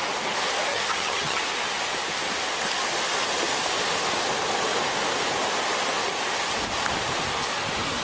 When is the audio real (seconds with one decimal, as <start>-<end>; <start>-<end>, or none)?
0.0-0.7; 1.4-8.0

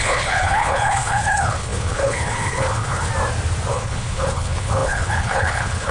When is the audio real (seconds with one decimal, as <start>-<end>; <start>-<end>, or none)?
3.1-3.7

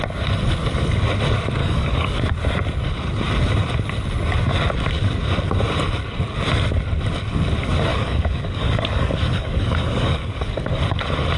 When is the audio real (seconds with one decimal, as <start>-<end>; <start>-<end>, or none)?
0.0-1.6; 2.2-7.9; 10.8-11.4

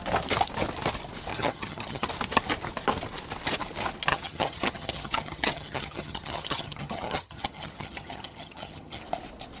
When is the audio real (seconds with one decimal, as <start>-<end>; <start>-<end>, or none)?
0.0-1.3; 2.1-4.1; 9.0-9.6

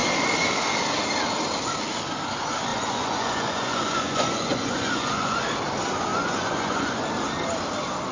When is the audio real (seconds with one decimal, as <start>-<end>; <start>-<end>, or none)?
0.0-2.7; 5.5-6.1; 7.0-8.1